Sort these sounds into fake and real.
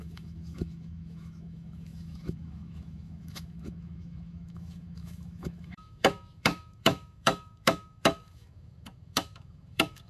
fake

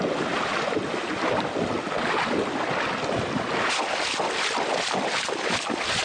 real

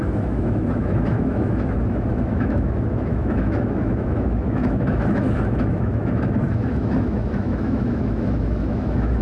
fake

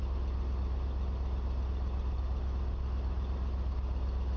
real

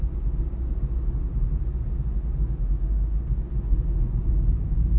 real